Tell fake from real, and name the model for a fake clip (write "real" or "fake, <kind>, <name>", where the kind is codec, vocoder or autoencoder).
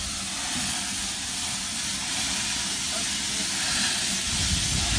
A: real